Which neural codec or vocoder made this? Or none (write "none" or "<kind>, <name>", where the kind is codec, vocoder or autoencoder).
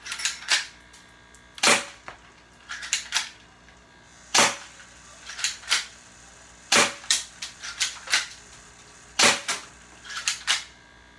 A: none